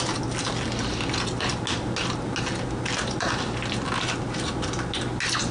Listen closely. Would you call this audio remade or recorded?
recorded